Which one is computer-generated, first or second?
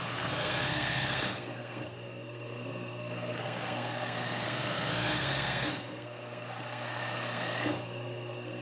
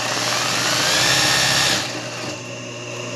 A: first